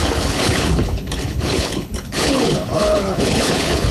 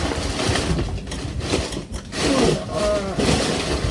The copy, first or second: first